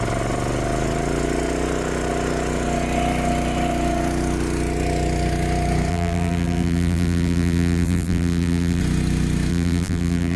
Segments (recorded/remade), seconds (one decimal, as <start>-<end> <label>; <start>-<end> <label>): 0.0-5.9 recorded; 5.9-8.8 remade; 8.8-9.5 recorded; 9.5-10.4 remade